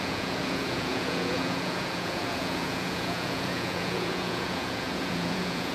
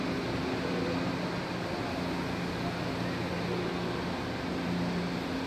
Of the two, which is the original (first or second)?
second